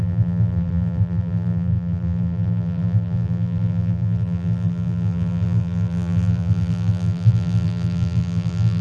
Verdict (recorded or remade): remade